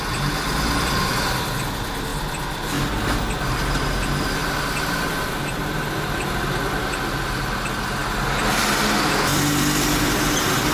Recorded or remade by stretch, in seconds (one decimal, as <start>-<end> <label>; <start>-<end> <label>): 0.0-10.7 recorded

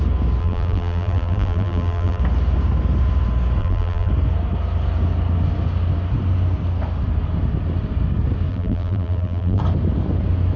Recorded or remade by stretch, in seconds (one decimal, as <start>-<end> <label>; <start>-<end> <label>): 0.0-0.4 recorded; 0.4-2.2 remade; 2.2-3.6 recorded; 3.6-4.1 remade; 4.1-8.5 recorded; 8.5-9.6 remade; 9.6-10.6 recorded

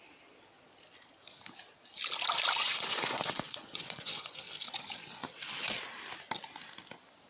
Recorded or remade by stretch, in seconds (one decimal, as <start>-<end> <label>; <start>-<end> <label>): 0.0-2.6 recorded; 2.6-4.4 remade; 4.4-7.3 recorded

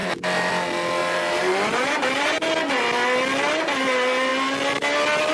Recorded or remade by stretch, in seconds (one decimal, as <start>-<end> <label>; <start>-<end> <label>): 0.0-1.0 recorded; 1.0-2.5 remade; 2.5-5.3 recorded